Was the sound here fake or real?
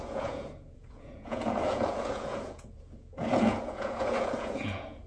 fake